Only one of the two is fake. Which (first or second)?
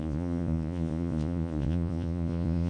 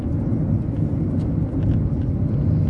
first